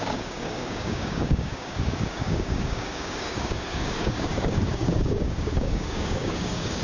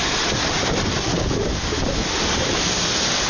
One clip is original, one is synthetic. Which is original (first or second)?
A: second